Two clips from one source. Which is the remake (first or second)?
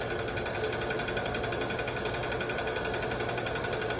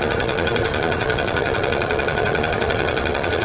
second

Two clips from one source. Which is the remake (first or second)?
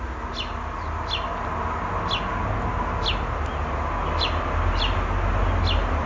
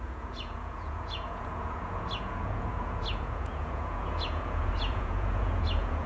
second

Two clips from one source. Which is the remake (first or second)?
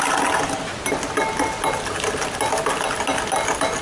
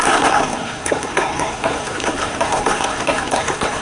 second